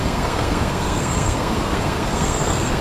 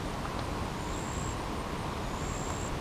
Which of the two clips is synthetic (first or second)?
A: first